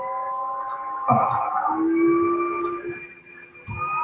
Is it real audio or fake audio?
real